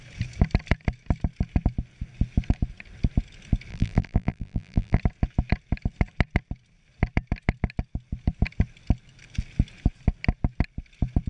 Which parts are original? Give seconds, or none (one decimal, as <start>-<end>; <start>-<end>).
0.0-3.7; 5.0-11.3